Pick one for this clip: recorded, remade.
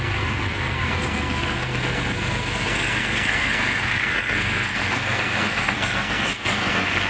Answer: remade